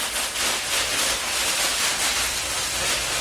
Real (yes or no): yes